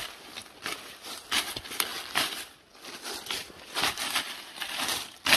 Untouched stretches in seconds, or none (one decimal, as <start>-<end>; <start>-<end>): 0.0-5.4